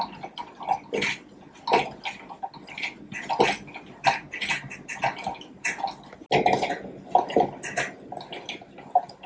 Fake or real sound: real